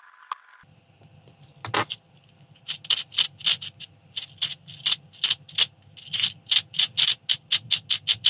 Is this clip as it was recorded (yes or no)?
yes